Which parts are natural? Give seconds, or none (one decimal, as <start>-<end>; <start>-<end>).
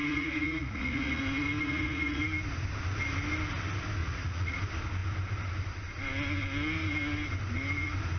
1.2-1.6; 2.2-4.0; 4.6-8.2